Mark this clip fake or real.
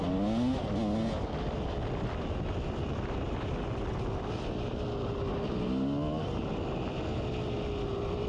real